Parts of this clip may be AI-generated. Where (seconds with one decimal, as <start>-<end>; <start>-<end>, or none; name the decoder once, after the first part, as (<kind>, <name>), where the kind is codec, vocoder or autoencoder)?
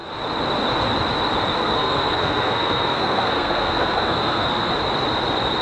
1.6-4.7 (codec, SNAC)